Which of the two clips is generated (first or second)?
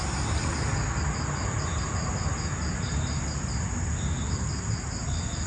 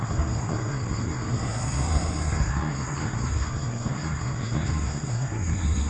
second